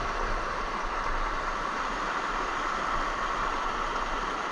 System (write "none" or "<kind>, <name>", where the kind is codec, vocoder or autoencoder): vocoder, BigVGAN v2